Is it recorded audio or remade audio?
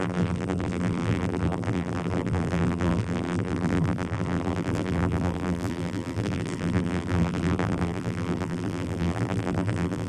remade